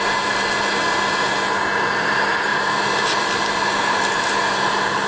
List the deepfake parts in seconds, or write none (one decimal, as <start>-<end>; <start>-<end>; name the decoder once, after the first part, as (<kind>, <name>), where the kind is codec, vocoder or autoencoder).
none